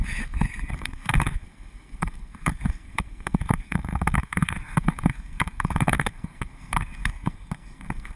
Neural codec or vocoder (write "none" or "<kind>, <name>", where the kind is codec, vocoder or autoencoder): codec, SNAC